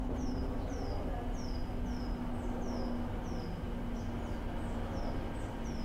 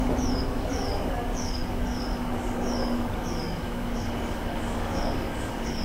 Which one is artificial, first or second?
second